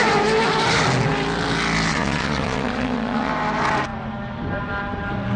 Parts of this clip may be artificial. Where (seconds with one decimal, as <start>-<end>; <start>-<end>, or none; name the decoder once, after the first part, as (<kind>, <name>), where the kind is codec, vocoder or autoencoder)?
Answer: 1.9-3.3 (vocoder, Vocos)